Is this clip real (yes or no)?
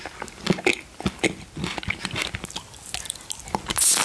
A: yes